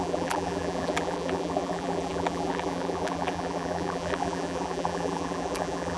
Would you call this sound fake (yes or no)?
yes